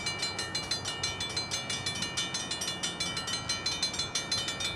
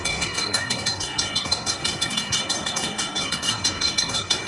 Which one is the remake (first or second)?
second